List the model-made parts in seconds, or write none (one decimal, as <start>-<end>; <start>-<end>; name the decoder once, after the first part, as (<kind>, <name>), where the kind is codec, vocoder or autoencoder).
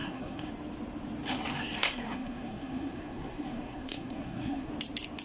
0.0-0.5 (codec, SNAC); 1.6-4.7